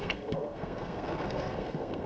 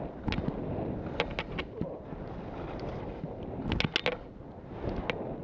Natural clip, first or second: second